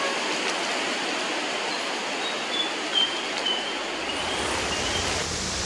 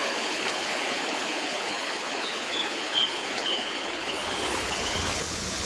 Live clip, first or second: first